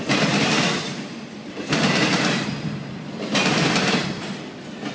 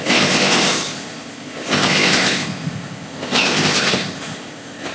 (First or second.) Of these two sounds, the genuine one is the first